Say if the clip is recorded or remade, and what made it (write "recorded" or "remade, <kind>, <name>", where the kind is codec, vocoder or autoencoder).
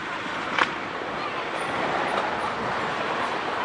recorded